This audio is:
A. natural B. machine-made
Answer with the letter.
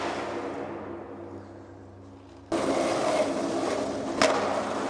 A